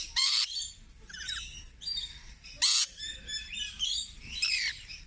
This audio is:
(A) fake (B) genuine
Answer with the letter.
A